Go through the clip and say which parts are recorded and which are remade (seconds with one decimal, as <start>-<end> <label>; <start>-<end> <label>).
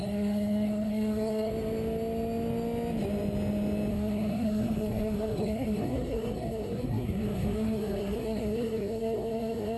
0.0-1.5 remade; 1.5-3.9 recorded; 3.9-9.8 remade